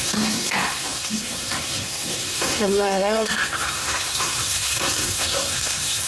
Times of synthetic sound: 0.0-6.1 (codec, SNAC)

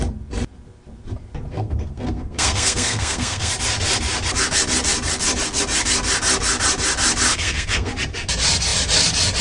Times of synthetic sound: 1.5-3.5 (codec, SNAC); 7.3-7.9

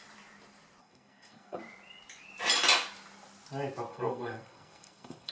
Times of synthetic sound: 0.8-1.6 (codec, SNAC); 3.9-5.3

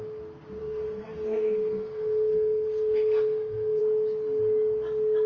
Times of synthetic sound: 0.6-3.8 (codec, SNAC)

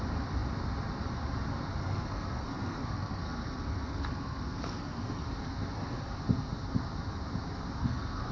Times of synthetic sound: 1.8-5.2 (codec, SNAC); 7.8-8.3

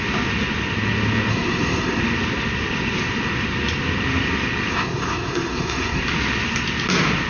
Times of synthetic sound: 1.3-2.0 (codec, SNAC); 4.7-6.0

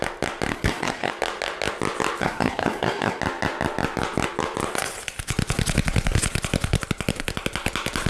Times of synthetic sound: 0.5-1.1 (codec, SNAC); 2.2-3.2

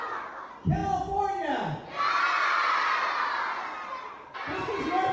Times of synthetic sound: none